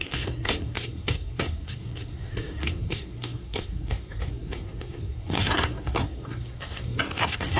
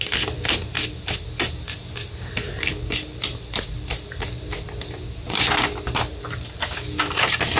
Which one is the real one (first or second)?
second